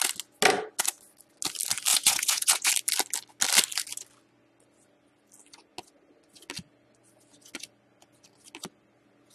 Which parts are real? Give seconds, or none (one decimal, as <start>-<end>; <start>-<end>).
0.0-1.9; 2.7-9.3